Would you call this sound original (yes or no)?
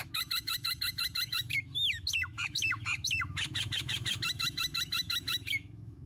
no